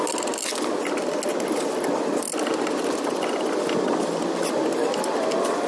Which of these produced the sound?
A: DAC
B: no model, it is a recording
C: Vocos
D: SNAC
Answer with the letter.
B